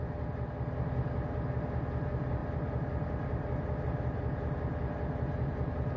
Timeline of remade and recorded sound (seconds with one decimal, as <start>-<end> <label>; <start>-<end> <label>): 0.0-6.0 recorded